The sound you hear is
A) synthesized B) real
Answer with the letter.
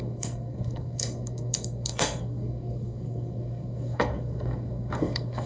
A